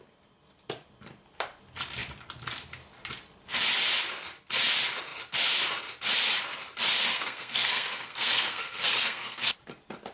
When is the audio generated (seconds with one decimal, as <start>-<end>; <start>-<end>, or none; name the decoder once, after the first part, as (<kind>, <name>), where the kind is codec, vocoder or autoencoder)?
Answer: 7.1-9.5 (codec, SNAC)